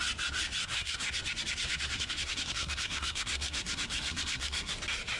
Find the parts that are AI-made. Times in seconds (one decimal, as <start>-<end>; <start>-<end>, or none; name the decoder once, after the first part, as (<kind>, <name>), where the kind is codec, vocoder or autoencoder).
0.6-1.1 (codec, SNAC); 1.7-4.7